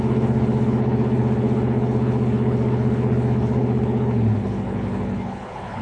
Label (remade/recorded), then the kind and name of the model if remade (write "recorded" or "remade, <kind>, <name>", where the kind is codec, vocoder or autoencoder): remade, codec, HILCodec